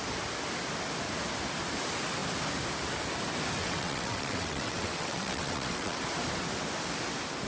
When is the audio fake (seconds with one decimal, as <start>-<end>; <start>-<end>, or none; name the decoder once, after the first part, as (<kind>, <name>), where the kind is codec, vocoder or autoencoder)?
3.6-6.0 (vocoder, WaveNeXt)